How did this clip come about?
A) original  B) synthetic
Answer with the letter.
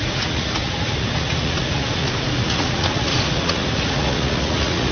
B